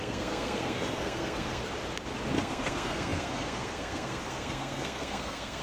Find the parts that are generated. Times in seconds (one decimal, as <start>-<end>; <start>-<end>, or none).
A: 0.0-1.6; 2.3-5.6